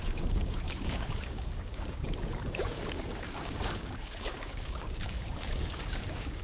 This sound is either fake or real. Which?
fake